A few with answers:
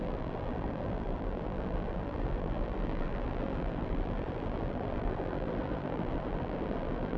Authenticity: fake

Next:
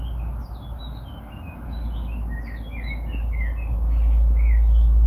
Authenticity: real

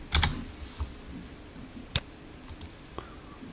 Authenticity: real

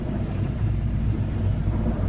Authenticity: fake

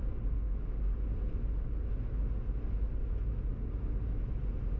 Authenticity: real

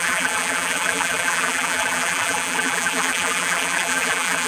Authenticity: fake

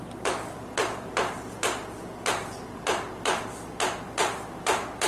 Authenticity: fake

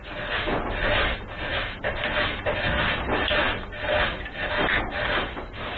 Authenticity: real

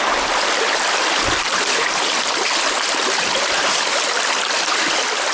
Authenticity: fake